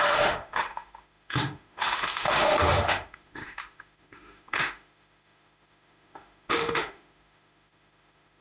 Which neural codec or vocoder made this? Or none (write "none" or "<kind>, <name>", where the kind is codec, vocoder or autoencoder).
autoencoder, DAC-VAE